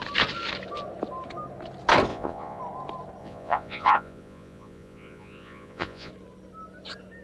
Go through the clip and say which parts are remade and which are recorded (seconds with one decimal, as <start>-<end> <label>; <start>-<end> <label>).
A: 0.0-2.1 recorded; 2.1-2.6 remade; 2.6-3.2 recorded; 3.2-6.1 remade; 6.1-7.2 recorded